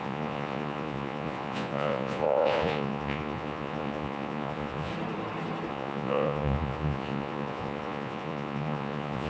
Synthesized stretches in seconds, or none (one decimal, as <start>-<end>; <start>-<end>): 0.0-4.9; 5.7-9.3